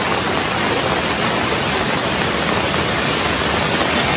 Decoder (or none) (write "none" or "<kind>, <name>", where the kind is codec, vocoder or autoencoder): none